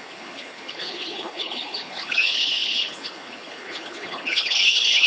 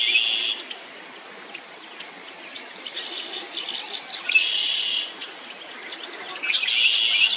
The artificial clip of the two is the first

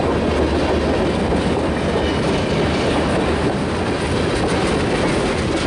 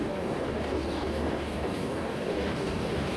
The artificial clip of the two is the second